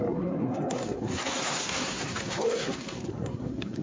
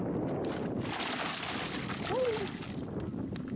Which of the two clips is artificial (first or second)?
first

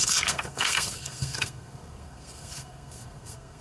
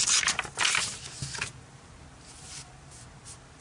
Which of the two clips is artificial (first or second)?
first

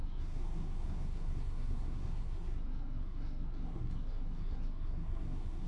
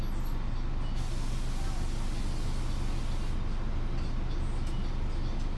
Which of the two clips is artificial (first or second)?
first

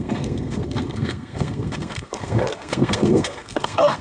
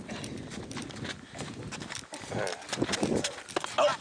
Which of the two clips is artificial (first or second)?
first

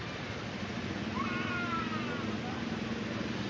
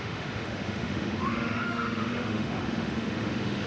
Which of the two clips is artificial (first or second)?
second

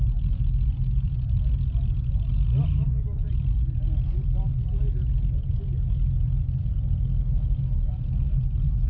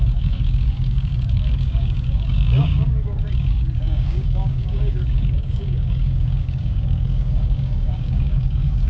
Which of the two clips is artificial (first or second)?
second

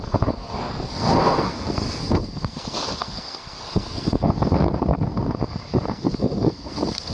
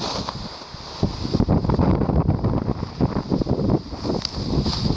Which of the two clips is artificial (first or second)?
first